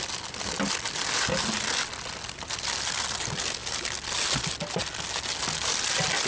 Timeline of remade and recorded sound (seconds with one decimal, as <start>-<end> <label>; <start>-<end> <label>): 0.0-6.3 recorded